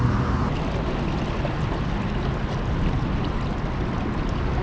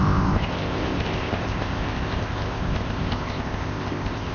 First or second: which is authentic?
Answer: first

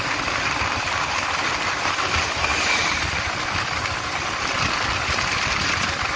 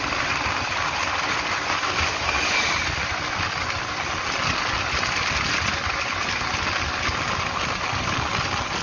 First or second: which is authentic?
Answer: second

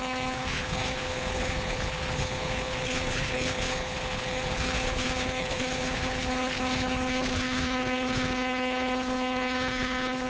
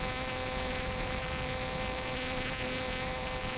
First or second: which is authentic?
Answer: second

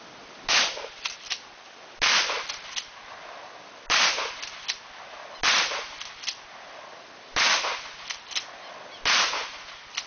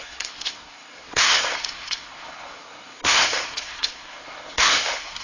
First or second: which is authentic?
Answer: first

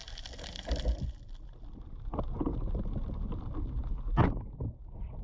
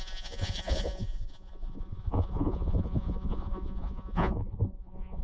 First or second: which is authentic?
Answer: first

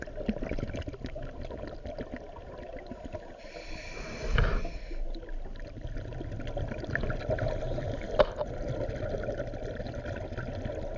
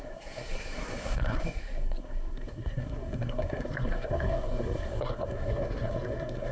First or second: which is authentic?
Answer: first